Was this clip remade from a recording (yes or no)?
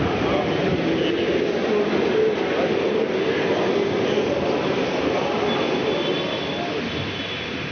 no